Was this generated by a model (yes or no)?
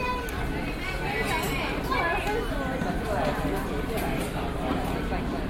no